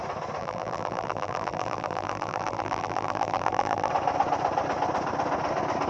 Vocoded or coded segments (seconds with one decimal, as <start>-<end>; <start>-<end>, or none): 0.4-3.9